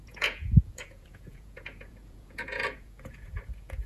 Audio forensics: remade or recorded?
remade